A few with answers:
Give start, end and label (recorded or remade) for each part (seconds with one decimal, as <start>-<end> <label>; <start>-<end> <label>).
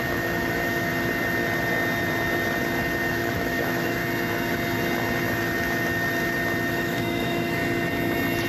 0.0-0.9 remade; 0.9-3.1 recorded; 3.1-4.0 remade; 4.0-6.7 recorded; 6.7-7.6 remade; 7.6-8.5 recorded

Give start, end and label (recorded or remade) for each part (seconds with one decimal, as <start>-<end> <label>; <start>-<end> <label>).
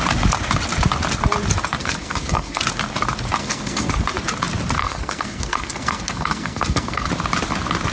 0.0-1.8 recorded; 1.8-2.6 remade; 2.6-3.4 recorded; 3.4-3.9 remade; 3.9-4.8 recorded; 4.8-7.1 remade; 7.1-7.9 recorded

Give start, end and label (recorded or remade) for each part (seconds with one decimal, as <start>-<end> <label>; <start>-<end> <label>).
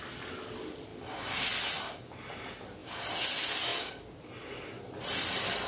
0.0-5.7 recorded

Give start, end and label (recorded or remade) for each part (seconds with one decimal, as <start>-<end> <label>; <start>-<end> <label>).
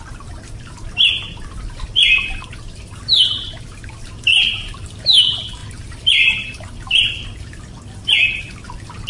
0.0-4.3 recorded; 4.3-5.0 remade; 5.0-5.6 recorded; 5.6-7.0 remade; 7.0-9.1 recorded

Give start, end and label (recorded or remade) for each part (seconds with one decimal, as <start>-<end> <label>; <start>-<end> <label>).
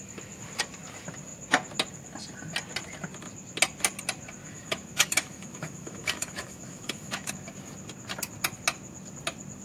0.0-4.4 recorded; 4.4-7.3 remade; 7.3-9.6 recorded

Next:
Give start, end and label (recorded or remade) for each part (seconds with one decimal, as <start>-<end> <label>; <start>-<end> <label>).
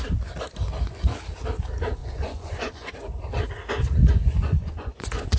0.0-2.0 recorded; 2.0-2.9 remade; 2.9-4.0 recorded; 4.0-5.4 remade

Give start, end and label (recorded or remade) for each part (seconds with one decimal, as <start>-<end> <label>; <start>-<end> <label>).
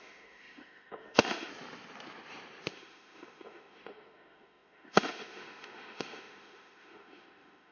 0.0-1.5 remade; 1.5-2.7 recorded; 2.7-7.7 remade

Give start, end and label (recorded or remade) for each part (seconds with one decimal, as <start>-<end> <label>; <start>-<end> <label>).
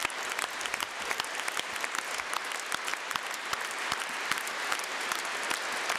0.0-2.1 remade; 2.1-2.9 recorded; 2.9-5.2 remade; 5.2-6.0 recorded